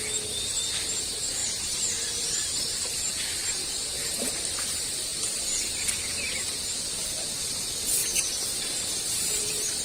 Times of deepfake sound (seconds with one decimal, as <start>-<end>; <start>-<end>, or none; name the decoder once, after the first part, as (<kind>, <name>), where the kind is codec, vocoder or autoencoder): 1.4-4.3 (vocoder, BigVGAN v2); 5.1-6.1; 8.0-9.8

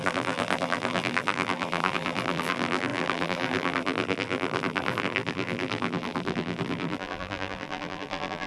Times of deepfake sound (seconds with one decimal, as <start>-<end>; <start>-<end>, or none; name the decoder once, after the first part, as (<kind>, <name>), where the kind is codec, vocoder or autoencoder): 0.0-8.5 (vocoder, BigVGAN v2)